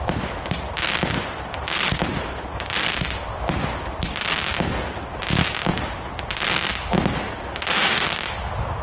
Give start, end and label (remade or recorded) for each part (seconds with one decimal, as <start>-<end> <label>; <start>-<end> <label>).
0.0-5.7 recorded; 5.7-7.1 remade; 7.1-8.8 recorded